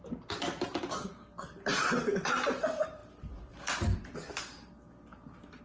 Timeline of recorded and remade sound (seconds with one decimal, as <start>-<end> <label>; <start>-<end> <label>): 0.0-5.6 recorded